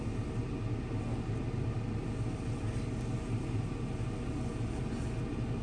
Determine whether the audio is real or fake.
real